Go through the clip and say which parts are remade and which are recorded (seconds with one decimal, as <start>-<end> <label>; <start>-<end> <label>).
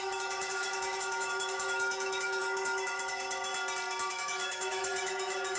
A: 0.0-3.5 remade; 3.5-4.1 recorded; 4.1-5.6 remade